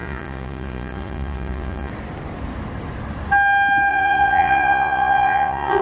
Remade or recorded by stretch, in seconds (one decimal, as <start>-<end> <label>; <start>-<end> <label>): 0.0-1.9 remade; 1.9-3.9 recorded; 3.9-5.8 remade